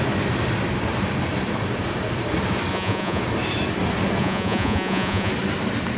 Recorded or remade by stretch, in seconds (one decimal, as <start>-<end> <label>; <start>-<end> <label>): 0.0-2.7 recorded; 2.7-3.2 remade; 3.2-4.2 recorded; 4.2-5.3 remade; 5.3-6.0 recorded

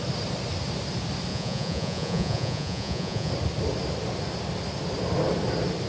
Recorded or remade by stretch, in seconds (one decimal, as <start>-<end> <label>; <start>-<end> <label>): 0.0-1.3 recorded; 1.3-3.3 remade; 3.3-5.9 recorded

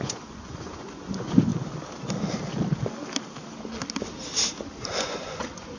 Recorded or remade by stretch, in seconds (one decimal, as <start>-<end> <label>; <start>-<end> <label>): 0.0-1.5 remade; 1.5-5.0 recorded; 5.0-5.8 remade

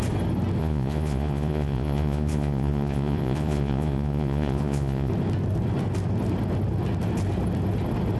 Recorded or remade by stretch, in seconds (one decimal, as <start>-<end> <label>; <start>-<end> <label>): 0.0-0.6 recorded; 0.6-5.1 remade; 5.1-8.2 recorded

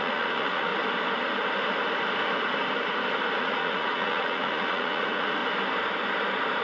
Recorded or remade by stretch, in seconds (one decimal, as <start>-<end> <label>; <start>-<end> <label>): 0.0-0.7 remade; 0.7-3.4 recorded; 3.4-5.4 remade; 5.4-6.6 recorded